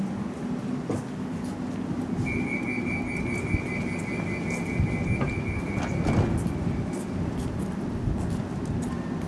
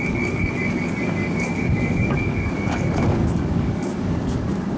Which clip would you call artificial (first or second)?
second